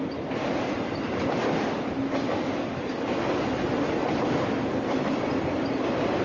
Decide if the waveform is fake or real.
real